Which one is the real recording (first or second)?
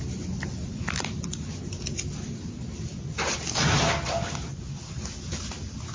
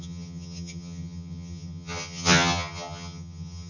first